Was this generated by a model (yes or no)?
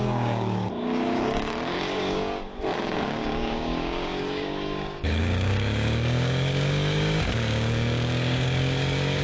yes